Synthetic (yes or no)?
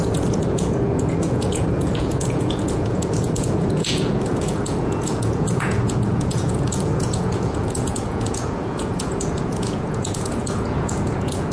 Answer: yes